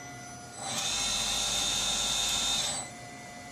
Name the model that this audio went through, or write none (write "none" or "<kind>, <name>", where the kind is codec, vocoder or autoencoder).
none